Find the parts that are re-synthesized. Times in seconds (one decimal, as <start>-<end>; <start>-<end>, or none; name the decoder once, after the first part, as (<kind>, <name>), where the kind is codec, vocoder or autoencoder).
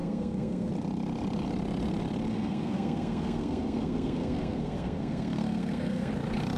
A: 0.0-0.7 (codec, SNAC); 2.3-6.1